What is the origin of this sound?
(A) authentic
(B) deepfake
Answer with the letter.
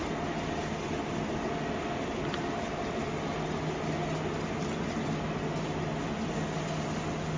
A